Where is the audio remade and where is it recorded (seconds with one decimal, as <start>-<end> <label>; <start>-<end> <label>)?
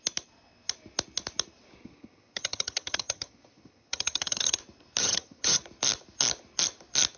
0.0-1.8 recorded; 1.8-4.6 remade; 4.6-5.0 recorded; 5.0-5.6 remade; 5.6-7.2 recorded